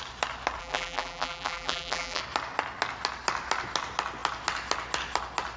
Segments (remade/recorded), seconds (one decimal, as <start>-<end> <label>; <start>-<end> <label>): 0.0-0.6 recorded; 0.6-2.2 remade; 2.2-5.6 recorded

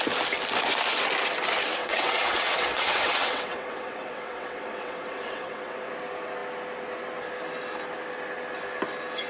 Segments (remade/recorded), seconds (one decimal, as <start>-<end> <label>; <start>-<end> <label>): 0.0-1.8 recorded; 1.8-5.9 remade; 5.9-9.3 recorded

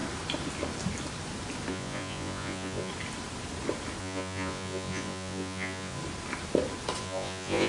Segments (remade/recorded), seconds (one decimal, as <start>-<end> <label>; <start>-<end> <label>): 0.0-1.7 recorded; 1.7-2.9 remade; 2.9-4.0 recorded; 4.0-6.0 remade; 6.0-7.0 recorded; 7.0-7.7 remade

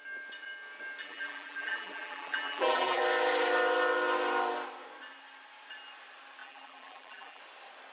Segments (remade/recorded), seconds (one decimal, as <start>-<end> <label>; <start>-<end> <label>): 0.0-1.0 recorded; 1.0-3.0 remade; 3.0-6.4 recorded; 6.4-7.4 remade; 7.4-7.9 recorded